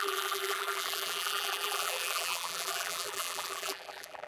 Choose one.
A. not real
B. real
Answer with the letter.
A